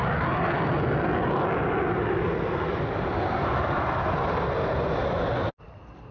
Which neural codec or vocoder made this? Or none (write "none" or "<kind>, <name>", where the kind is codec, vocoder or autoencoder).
none